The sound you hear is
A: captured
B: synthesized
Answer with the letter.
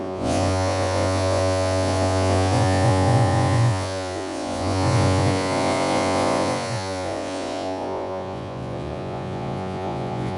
B